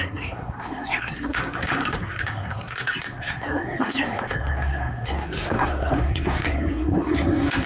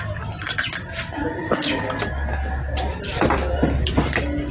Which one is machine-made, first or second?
first